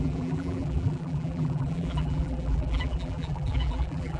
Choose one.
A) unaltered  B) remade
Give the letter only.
B